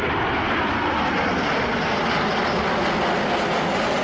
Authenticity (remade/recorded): recorded